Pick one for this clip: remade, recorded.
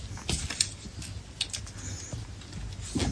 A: recorded